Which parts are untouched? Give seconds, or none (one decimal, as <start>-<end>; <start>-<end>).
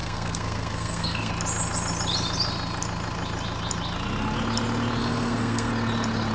1.3-5.0; 5.7-6.3